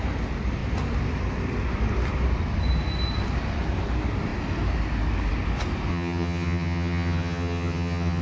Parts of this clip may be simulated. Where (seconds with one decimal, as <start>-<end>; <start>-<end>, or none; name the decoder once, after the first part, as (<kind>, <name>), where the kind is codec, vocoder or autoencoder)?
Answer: 5.9-8.2 (vocoder, HiFi-GAN)